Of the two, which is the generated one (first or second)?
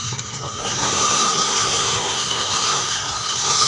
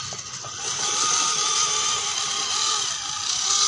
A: first